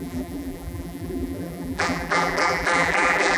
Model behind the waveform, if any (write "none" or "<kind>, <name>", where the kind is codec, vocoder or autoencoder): vocoder, BigVGAN v2